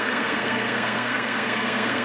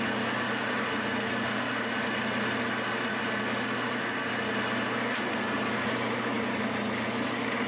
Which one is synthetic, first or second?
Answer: first